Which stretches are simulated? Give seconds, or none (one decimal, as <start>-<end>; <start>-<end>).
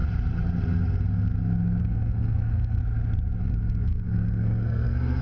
1.8-2.8; 3.4-5.2